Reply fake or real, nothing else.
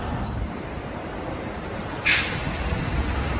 real